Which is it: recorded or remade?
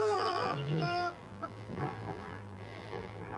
remade